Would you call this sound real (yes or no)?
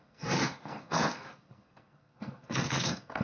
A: no